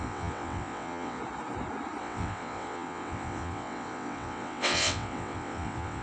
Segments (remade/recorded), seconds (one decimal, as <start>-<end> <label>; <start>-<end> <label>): 0.0-1.2 remade; 1.2-2.0 recorded; 2.0-6.0 remade